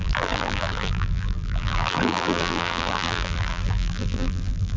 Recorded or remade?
remade